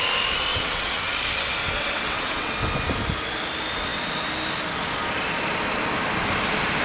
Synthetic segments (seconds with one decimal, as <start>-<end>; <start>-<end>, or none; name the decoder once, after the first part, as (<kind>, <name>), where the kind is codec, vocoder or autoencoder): 0.5-1.1 (vocoder, WaveNeXt); 1.6-2.5